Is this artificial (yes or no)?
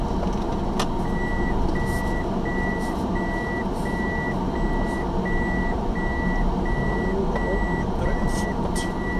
no